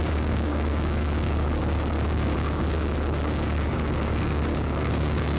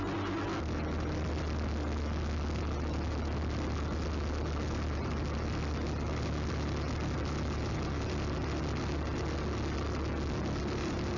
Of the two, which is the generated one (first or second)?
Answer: first